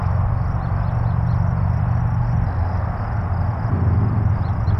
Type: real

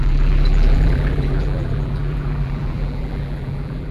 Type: fake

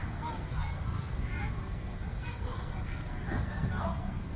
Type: fake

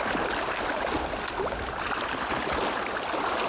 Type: real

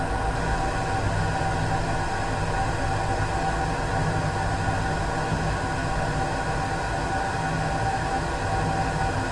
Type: real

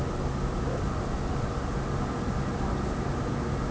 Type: real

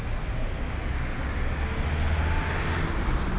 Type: real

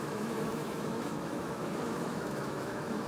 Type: fake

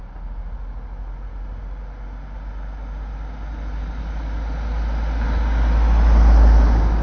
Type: real